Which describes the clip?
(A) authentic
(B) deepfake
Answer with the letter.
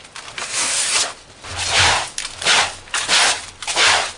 A